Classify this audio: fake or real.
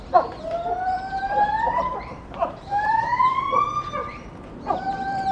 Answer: fake